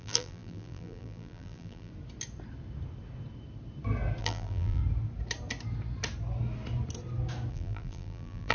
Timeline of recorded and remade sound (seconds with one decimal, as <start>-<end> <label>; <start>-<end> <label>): 0.0-1.9 remade; 1.9-4.2 recorded; 4.2-4.8 remade; 4.8-7.5 recorded; 7.5-8.5 remade